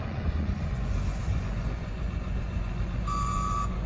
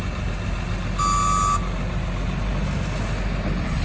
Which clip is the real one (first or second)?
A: second